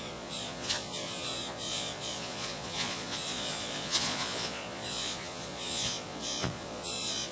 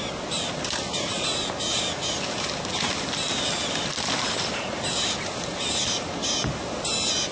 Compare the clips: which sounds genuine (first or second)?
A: second